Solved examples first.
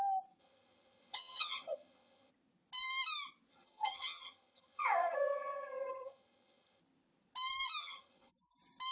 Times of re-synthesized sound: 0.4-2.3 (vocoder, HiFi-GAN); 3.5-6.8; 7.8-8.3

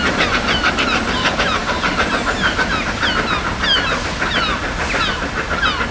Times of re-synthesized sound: none

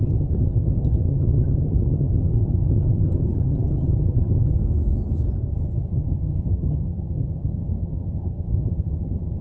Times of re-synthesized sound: 0.0-4.6 (vocoder, HiFi-GAN); 5.5-9.4

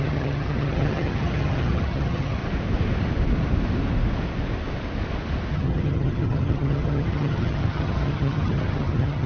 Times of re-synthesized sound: 0.0-2.4 (vocoder, HiFi-GAN); 5.5-9.3